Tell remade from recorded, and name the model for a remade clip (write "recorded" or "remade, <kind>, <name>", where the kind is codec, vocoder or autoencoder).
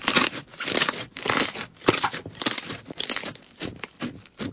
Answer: recorded